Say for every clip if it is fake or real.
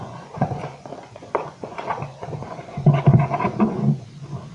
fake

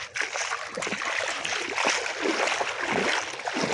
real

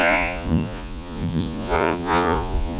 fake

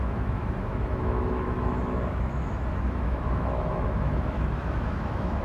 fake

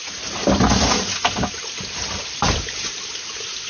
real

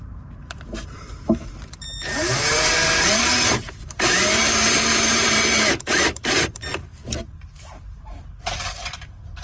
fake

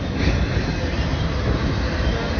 real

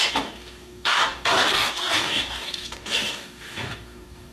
fake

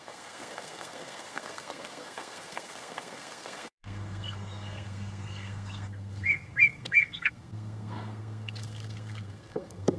fake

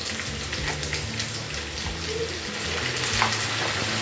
real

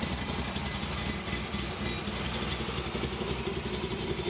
real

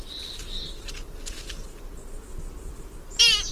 real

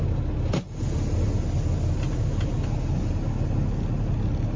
real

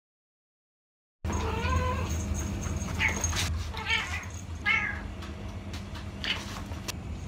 real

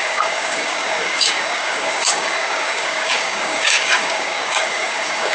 fake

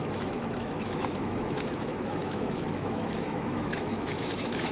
fake